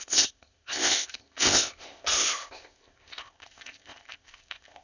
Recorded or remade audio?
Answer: remade